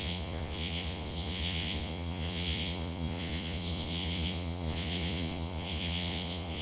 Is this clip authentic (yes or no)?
no